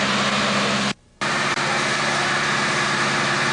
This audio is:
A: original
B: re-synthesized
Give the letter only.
A